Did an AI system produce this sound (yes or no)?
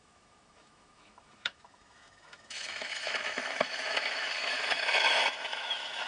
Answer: yes